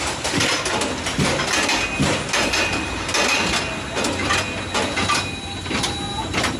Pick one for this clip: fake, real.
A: real